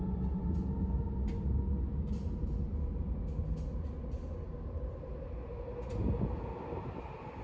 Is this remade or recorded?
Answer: recorded